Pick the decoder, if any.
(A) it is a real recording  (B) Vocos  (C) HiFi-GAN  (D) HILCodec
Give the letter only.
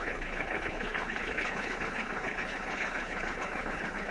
D